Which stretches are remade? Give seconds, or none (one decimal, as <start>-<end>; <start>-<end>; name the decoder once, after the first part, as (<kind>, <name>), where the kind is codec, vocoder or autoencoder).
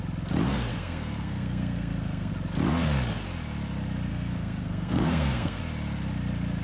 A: 0.7-2.3 (codec, SNAC); 4.1-5.6